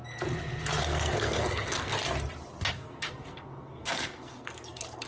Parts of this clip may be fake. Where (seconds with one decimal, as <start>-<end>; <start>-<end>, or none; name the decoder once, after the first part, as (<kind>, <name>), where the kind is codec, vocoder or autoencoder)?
0.8-2.0 (codec, SNAC); 2.7-5.1